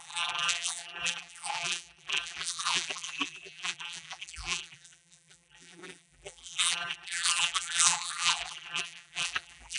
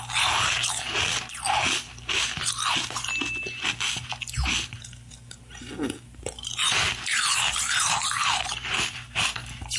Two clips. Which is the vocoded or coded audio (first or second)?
first